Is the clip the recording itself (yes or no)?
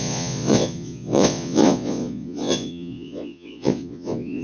no